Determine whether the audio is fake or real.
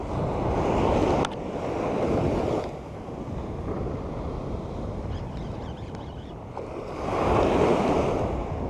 real